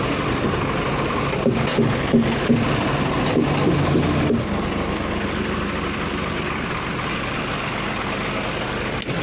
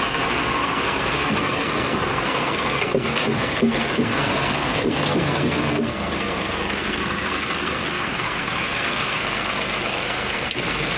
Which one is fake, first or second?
second